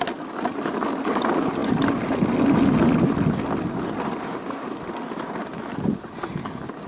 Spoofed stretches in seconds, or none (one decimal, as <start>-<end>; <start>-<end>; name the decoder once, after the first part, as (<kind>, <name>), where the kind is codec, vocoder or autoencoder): none